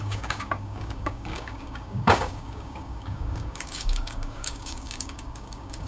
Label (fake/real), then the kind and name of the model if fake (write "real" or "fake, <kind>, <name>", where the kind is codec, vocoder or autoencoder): fake, codec, DAC